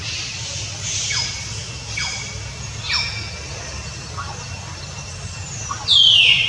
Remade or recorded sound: recorded